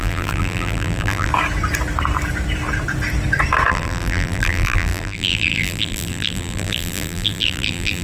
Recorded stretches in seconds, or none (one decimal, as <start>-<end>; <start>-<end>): 1.3-3.7